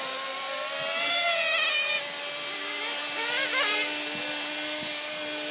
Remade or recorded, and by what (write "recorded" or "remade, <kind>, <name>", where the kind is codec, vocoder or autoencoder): recorded